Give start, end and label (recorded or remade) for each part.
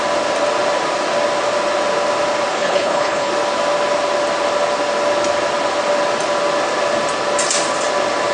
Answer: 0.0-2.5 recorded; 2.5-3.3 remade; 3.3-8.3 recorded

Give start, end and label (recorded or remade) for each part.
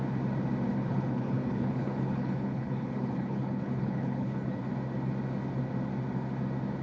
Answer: 0.0-0.7 recorded; 0.7-4.6 remade; 4.6-6.8 recorded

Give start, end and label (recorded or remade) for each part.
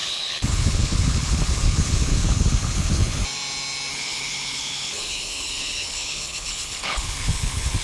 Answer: 0.0-3.2 remade; 3.2-3.9 recorded; 3.9-7.8 remade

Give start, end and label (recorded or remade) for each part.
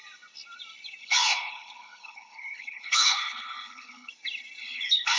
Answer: 0.0-1.0 recorded; 1.0-4.1 remade; 4.1-4.6 recorded; 4.6-5.2 remade